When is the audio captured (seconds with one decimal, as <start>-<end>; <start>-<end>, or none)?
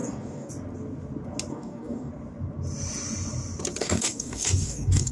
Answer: 0.5-1.5; 2.1-3.8